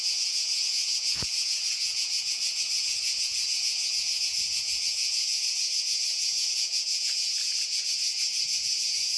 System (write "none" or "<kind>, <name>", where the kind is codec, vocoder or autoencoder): vocoder, Vocos